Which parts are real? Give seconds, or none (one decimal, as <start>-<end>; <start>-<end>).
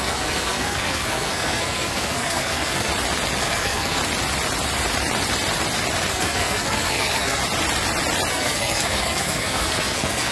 2.9-3.4; 4.0-6.1; 7.4-8.3